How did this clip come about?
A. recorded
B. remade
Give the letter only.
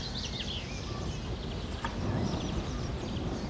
A